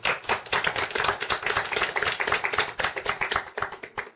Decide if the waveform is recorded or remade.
recorded